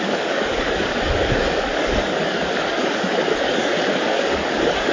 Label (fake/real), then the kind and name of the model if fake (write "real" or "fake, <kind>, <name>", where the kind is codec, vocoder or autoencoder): fake, codec, DAC